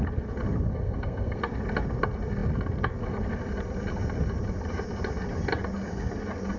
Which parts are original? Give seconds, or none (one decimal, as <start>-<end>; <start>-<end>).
0.0-0.7; 1.4-6.6